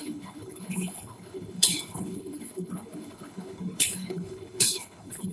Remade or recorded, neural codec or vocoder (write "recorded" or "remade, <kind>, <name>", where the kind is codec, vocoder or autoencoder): remade, codec, HILCodec